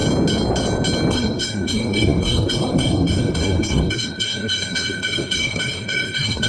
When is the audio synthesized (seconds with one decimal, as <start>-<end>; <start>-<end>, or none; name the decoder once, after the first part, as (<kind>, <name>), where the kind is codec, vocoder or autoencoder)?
1.1-6.5 (codec, SNAC)